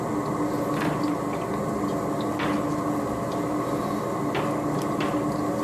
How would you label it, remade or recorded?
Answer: recorded